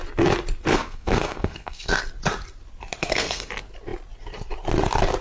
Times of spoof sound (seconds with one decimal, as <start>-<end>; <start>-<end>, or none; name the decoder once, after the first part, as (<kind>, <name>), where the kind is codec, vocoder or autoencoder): 0.7-2.0 (codec, SNAC); 3.0-3.5